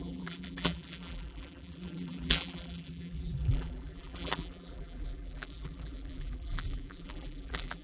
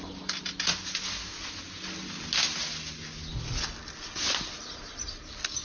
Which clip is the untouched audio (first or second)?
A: second